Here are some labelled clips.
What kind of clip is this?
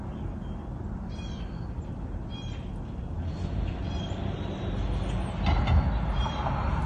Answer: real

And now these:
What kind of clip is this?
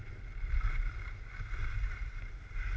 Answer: real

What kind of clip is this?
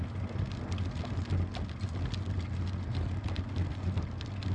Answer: real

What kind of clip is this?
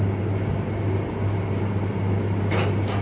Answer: real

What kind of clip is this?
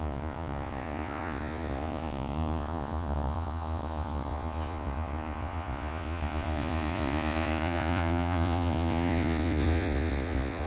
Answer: fake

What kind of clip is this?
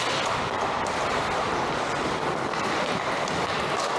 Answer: real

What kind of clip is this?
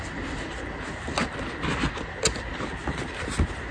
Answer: real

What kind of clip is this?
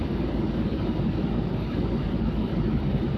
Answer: fake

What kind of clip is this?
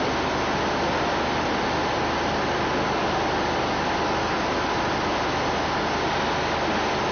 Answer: real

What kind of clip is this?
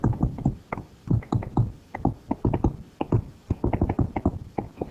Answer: real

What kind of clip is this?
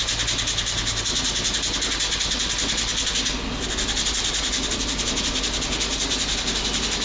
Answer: real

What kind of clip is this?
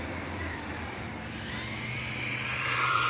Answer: fake